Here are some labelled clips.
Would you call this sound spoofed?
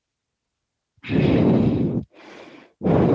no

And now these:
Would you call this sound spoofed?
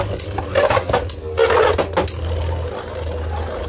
no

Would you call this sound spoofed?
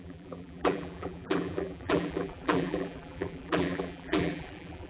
yes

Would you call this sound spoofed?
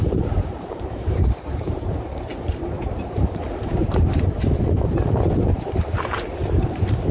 yes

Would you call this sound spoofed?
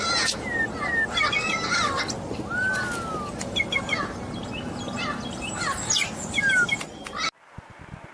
no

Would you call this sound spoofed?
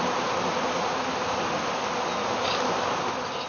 no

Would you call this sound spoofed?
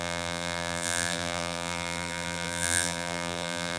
yes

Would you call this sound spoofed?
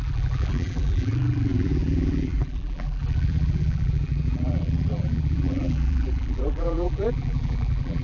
yes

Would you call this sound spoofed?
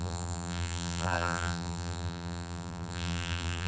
yes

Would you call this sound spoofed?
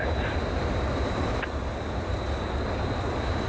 yes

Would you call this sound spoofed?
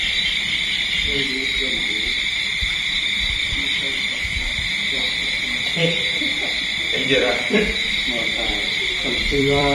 yes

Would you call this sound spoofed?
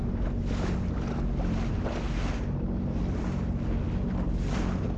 no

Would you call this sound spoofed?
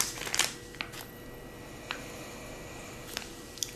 no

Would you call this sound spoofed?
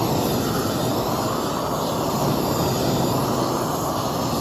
no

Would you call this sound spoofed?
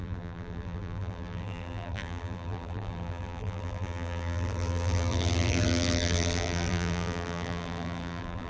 yes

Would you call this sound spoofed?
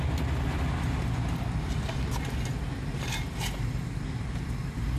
no